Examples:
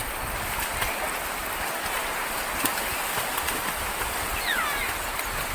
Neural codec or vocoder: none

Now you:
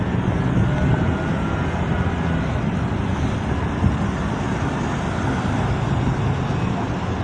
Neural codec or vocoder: none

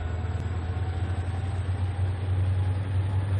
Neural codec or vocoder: none